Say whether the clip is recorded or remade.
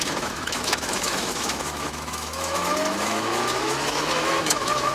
remade